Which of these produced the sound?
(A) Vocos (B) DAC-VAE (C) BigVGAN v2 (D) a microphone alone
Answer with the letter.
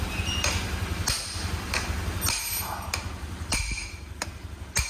D